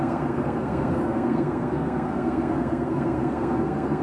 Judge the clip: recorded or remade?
remade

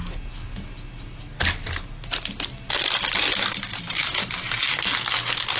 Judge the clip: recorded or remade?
recorded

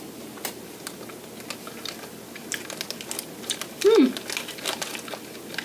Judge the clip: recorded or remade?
recorded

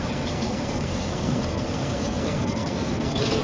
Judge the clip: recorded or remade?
remade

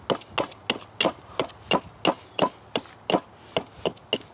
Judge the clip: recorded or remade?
recorded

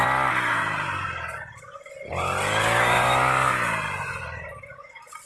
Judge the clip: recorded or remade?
recorded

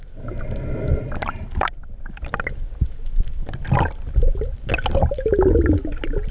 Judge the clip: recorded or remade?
recorded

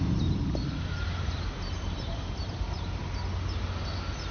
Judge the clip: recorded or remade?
recorded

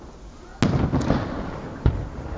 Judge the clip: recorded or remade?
recorded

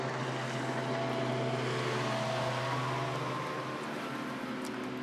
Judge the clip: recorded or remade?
recorded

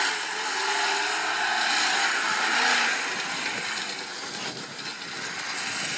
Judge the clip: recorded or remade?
recorded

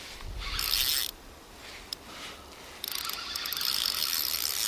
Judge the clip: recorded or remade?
recorded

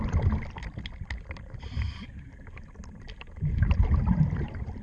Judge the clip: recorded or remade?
recorded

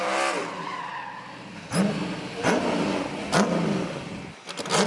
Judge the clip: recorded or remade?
recorded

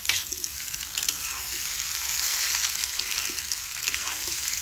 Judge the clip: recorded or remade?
remade